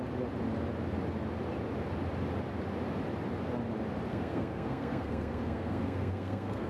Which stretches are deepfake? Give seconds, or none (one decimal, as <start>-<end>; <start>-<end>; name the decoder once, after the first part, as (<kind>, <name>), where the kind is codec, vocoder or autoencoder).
4.1-6.7 (codec, SNAC)